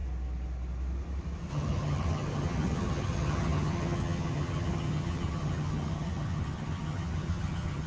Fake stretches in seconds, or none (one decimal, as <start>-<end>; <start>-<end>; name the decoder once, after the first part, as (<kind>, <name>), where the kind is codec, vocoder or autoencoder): 1.5-7.9 (vocoder, HiFi-GAN)